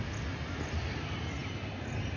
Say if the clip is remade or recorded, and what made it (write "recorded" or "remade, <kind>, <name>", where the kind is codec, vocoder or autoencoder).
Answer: recorded